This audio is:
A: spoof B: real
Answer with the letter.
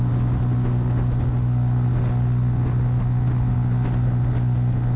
B